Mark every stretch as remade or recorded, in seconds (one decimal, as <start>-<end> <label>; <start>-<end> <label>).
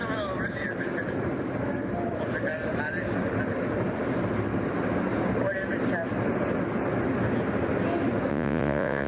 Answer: 0.0-8.3 recorded; 8.3-9.1 remade